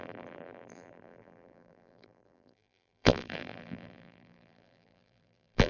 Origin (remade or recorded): remade